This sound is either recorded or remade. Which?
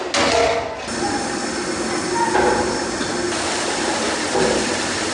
recorded